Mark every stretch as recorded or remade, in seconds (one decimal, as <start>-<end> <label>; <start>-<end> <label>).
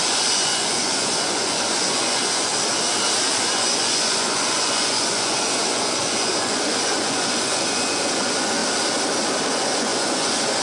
0.0-2.5 remade; 2.5-3.4 recorded; 3.4-8.6 remade; 8.6-9.5 recorded; 9.5-10.6 remade